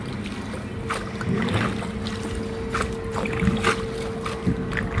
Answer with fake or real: real